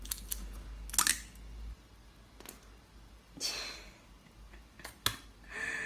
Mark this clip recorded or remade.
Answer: recorded